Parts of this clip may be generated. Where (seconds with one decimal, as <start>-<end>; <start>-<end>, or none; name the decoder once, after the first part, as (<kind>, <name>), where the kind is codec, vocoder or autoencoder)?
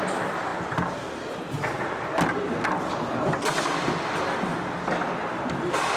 0.0-0.5 (vocoder, BigVGAN v2); 4.1-6.0